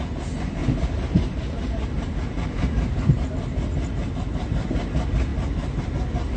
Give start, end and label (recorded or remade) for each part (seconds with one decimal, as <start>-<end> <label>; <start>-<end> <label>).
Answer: 0.0-0.6 recorded; 0.6-4.1 remade; 4.1-6.4 recorded